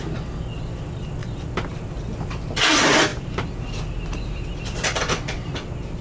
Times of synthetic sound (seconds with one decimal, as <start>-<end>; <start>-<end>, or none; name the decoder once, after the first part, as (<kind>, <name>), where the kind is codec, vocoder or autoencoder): none